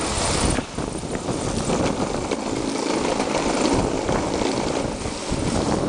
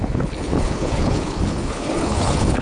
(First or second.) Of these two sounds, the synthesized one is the second